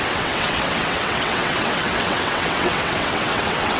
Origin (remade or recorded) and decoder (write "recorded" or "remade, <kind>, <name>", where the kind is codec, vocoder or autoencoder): remade, vocoder, WaveNeXt